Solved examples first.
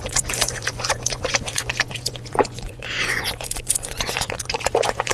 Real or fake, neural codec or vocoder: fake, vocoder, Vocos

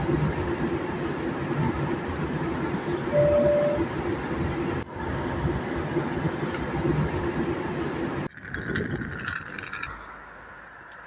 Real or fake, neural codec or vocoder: real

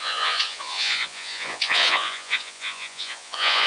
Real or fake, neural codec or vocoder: fake, vocoder, Vocos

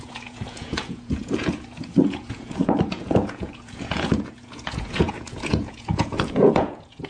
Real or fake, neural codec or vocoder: fake, vocoder, Vocos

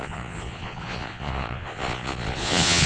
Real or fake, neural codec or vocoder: fake, vocoder, Vocos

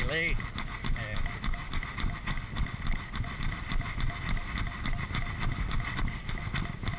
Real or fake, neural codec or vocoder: real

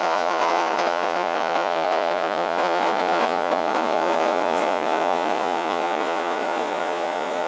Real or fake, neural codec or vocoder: fake, vocoder, Vocos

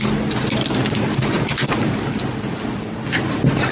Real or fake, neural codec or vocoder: real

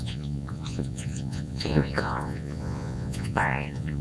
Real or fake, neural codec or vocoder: fake, vocoder, Vocos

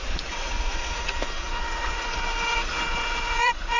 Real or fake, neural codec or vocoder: fake, vocoder, Vocos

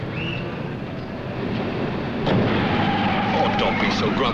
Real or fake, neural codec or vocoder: real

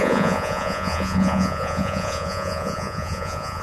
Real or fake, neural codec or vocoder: fake, vocoder, Vocos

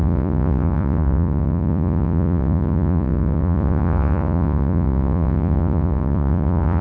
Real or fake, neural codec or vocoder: fake, vocoder, Vocos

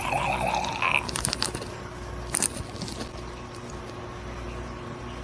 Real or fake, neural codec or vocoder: real